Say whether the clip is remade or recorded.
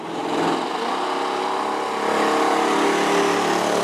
recorded